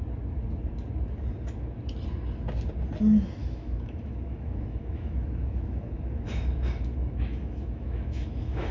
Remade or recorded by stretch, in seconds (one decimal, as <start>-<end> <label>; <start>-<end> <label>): 0.0-3.4 recorded; 3.4-8.7 remade